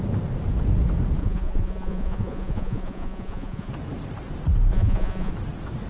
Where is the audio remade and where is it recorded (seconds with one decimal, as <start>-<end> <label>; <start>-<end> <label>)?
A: 0.0-1.2 recorded; 1.2-3.7 remade; 3.7-4.7 recorded; 4.7-5.3 remade; 5.3-5.9 recorded